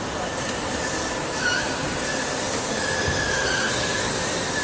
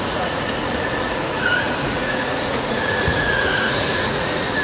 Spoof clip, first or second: second